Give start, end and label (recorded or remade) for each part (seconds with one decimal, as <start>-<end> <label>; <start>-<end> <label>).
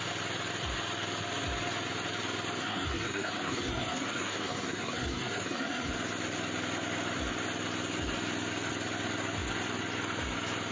0.0-2.6 recorded; 2.6-5.9 remade; 5.9-10.7 recorded